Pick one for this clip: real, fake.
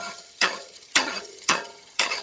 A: fake